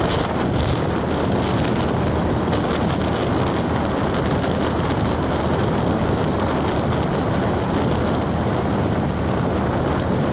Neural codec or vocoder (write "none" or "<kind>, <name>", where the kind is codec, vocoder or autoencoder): none